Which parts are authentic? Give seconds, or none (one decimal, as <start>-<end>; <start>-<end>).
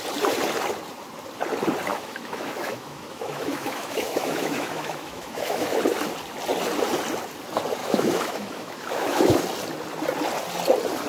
0.0-1.9; 5.8-7.8; 9.4-11.1